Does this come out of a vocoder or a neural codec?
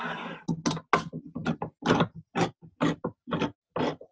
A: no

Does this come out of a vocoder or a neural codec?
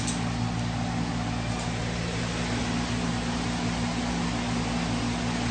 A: no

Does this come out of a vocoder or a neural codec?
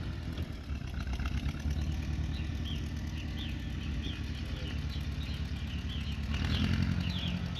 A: no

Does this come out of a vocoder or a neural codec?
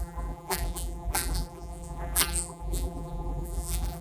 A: yes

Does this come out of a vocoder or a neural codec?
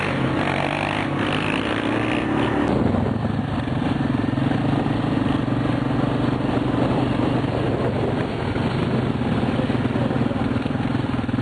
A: no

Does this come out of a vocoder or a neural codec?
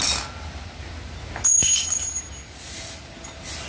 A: no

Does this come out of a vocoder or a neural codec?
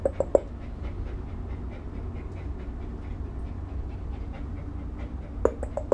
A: no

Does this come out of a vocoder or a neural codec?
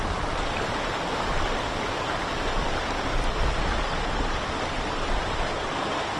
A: no